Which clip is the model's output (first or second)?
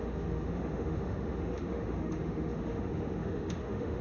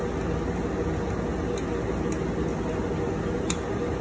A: first